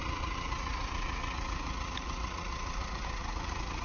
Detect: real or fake fake